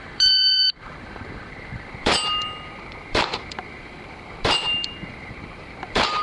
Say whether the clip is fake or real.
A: fake